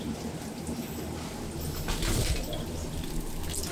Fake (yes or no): no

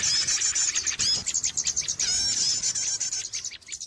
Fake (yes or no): no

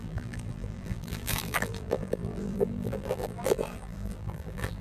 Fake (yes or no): yes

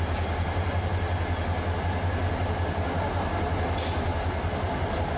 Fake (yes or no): no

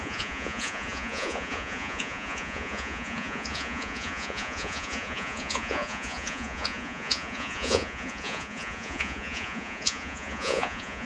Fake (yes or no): yes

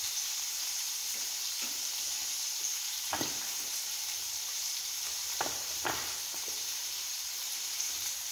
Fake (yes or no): yes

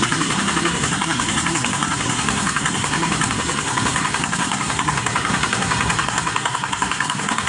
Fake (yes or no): yes